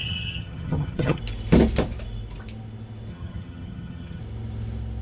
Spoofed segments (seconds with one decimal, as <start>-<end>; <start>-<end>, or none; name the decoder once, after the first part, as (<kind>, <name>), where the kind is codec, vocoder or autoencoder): 0.0-1.2 (vocoder, HiFi-GAN); 3.1-4.2